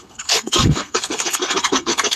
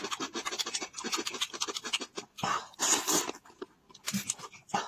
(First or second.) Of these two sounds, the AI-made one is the first